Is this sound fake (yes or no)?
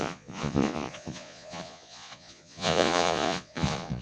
yes